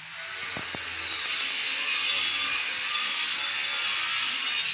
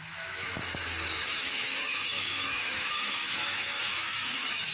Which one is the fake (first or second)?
second